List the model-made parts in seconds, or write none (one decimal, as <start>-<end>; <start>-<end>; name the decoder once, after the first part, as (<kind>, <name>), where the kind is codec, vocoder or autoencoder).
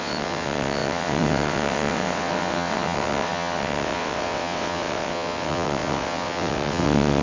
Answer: 0.0-7.2 (vocoder, WaveNeXt)